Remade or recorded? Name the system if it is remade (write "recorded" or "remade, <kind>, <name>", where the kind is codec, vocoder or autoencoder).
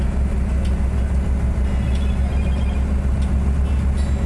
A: recorded